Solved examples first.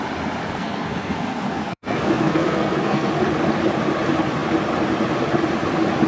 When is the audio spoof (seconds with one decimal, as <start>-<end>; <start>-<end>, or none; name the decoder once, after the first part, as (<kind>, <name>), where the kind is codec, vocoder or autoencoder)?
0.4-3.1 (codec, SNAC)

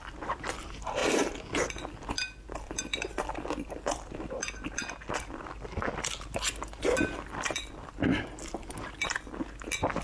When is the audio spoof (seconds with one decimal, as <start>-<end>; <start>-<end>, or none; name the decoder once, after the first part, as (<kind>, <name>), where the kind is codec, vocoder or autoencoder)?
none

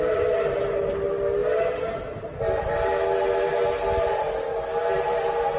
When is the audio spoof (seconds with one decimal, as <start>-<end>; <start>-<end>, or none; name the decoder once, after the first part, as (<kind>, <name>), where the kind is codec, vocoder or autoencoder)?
none

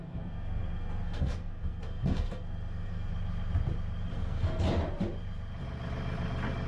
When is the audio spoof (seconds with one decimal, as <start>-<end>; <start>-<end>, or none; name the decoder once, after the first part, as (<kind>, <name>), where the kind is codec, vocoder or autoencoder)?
0.0-3.1 (codec, SNAC); 4.1-4.6

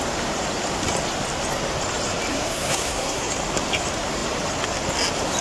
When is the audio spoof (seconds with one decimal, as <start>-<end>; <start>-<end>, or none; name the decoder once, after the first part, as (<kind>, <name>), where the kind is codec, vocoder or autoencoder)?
2.3-3.3 (codec, SNAC)